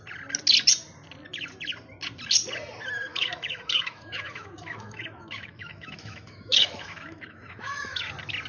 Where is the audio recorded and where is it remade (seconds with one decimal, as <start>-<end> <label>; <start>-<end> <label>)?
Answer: 0.0-3.1 recorded; 3.1-8.1 remade; 8.1-8.5 recorded